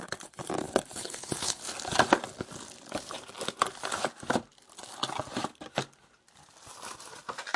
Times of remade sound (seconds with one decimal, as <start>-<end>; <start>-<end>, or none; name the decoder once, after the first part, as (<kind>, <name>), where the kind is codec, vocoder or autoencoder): 1.0-1.6 (codec, HILCodec)